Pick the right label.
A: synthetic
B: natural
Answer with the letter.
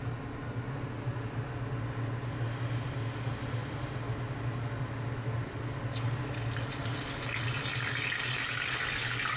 B